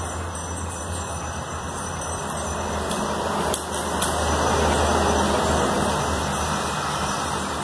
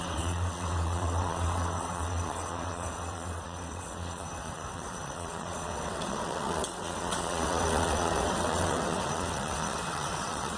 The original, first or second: first